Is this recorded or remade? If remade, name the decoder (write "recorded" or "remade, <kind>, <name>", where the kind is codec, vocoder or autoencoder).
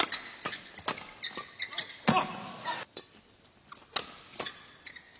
recorded